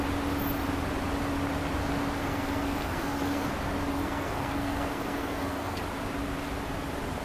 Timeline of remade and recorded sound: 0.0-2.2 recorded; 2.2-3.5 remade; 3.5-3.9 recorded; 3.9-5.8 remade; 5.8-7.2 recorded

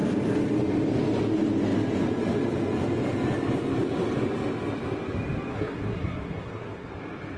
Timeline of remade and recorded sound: 0.0-5.5 recorded; 5.5-6.9 remade; 6.9-7.4 recorded

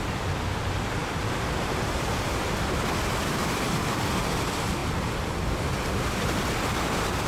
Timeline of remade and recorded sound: 0.0-1.0 recorded; 1.0-4.1 remade; 4.1-7.3 recorded

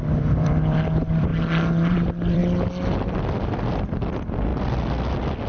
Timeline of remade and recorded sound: 0.0-1.3 remade; 1.3-1.9 recorded; 1.9-2.4 remade; 2.4-3.8 recorded; 3.8-4.5 remade; 4.5-5.5 recorded

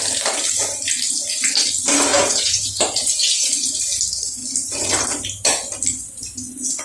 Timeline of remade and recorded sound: 0.0-2.1 recorded; 2.1-3.8 remade; 3.8-6.8 recorded

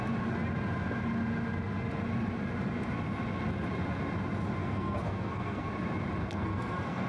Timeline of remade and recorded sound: 0.0-4.6 recorded; 4.6-5.7 remade; 5.7-6.2 recorded; 6.2-7.1 remade